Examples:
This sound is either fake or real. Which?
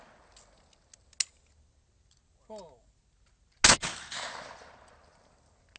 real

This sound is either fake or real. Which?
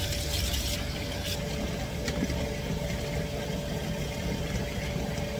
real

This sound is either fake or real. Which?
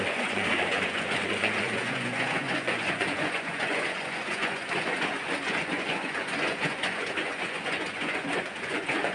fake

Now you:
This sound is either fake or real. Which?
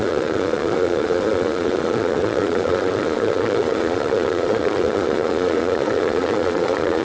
fake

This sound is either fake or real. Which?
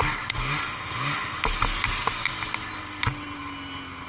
real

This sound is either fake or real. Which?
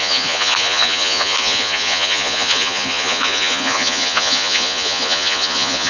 fake